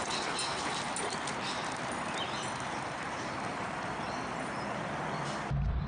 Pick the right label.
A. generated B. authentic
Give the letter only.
B